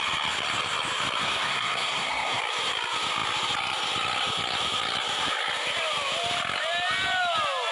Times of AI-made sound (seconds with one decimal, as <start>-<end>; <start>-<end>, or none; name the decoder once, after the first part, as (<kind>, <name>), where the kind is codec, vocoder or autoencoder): 1.2-2.4 (codec, SNAC)